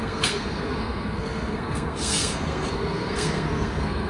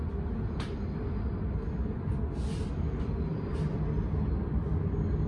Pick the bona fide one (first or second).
second